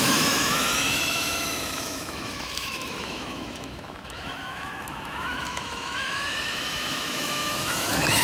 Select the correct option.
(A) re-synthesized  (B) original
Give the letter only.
A